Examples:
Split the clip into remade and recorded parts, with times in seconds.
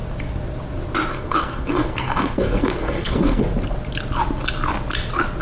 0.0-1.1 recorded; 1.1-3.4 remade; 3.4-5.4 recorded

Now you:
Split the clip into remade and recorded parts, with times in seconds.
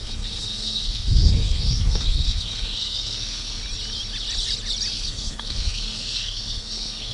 0.0-3.6 remade; 3.6-4.9 recorded; 4.9-7.1 remade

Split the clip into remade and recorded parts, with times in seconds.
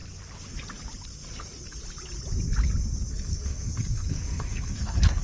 0.0-3.1 recorded; 3.1-5.2 remade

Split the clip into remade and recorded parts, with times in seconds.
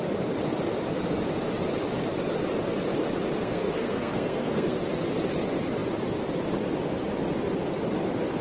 0.0-3.4 recorded; 3.4-4.8 remade; 4.8-8.4 recorded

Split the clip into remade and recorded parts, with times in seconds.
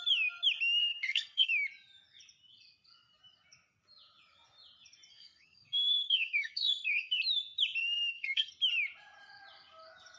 0.0-0.8 recorded; 0.8-1.5 remade; 1.5-5.1 recorded; 5.1-7.2 remade; 7.2-7.8 recorded; 7.8-8.5 remade; 8.5-10.2 recorded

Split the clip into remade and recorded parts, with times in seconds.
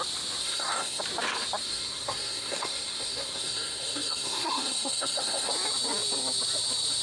0.0-0.4 recorded; 0.4-1.0 remade; 1.0-1.6 recorded; 1.6-5.5 remade; 5.5-7.0 recorded